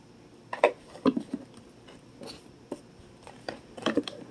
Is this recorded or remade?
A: recorded